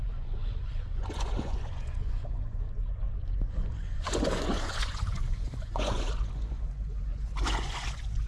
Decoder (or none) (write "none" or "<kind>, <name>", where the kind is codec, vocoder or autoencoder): vocoder, Vocos